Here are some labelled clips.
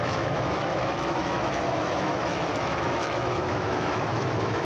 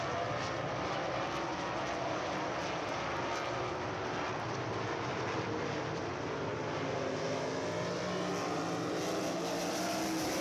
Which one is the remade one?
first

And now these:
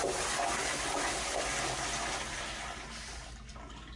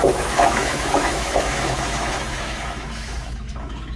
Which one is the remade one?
second